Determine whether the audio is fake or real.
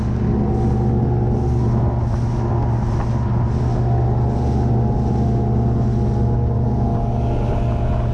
real